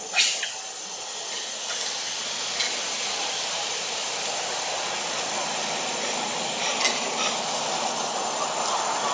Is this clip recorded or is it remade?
recorded